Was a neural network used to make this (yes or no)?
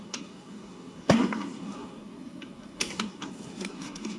yes